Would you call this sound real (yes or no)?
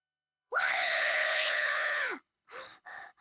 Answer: no